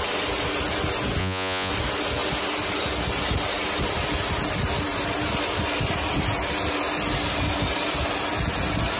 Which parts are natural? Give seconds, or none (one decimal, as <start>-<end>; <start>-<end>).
0.0-1.2; 1.7-9.0